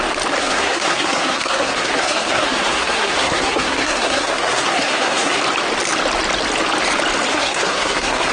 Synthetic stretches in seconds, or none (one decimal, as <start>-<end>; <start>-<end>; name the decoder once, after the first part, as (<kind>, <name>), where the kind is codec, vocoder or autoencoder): 0.4-5.4 (codec, SNAC); 7.3-8.3